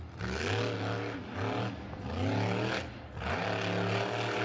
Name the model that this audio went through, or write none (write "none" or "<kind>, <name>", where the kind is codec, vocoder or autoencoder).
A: none